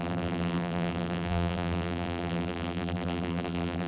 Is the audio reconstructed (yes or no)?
yes